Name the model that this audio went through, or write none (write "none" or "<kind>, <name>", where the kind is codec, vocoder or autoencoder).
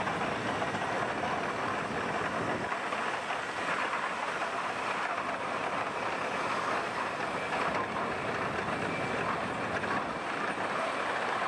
none